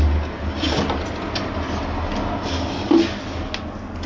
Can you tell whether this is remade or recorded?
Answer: recorded